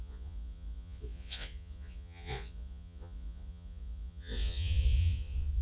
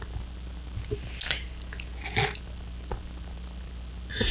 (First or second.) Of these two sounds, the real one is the second